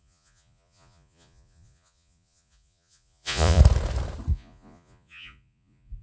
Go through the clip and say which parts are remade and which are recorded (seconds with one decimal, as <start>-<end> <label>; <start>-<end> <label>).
0.0-3.6 remade; 3.6-4.3 recorded; 4.3-6.0 remade